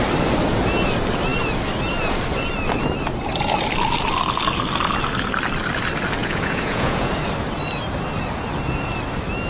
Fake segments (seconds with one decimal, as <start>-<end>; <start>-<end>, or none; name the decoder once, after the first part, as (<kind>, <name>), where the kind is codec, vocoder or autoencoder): 6.2-7.1 (vocoder, Vocos)